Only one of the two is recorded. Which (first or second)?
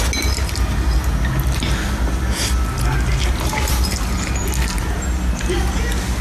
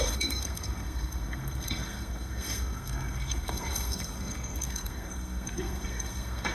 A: first